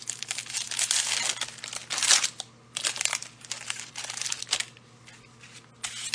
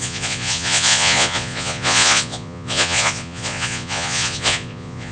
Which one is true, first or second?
first